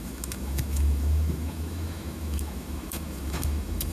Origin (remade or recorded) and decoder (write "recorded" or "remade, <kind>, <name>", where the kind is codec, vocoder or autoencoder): remade, autoencoder, DAC-VAE